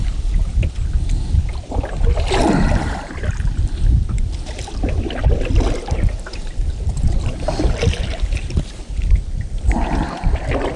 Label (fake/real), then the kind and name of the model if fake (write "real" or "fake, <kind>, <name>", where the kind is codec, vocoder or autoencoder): fake, vocoder, BigVGAN v2